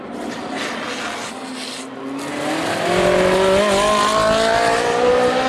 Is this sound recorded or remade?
recorded